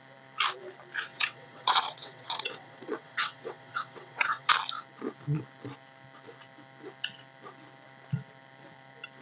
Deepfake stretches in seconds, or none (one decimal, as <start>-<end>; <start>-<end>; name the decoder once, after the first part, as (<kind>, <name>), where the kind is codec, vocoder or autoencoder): 1.1-4.5 (vocoder, WaveNeXt)